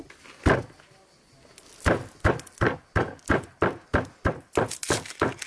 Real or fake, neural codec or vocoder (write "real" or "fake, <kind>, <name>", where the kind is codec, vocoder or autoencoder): real